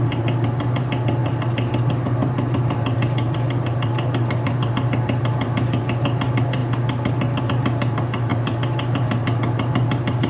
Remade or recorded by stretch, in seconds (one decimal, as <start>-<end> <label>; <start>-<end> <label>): 0.0-6.6 remade; 6.6-7.4 recorded; 7.4-10.3 remade